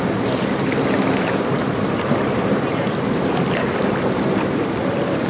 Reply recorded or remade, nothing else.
remade